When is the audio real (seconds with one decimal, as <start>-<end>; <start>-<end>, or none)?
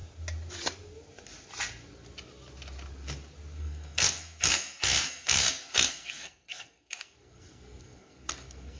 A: 0.0-3.6